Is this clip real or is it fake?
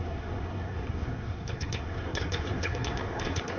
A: fake